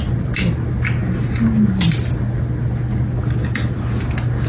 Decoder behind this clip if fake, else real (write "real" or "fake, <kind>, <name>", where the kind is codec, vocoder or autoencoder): real